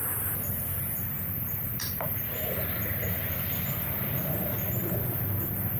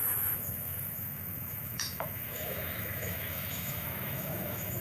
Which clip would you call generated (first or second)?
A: second